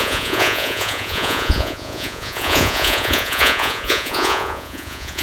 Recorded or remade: remade